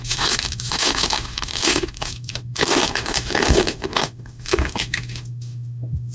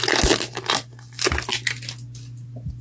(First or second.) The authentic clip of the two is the second